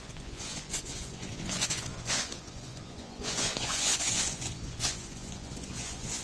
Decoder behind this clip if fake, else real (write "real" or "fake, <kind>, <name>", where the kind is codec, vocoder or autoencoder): fake, vocoder, Vocos